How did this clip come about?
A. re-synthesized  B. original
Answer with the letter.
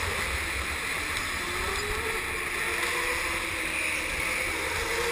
B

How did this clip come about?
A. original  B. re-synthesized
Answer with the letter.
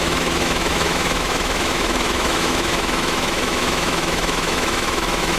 B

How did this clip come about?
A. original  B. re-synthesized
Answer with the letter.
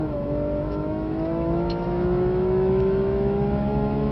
B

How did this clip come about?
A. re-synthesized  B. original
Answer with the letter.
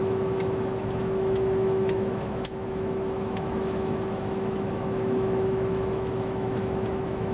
A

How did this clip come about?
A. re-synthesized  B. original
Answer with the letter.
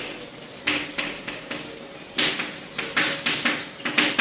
B